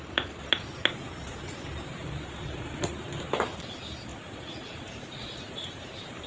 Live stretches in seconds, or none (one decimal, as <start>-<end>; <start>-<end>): 0.0-2.0; 3.0-4.1; 5.8-6.3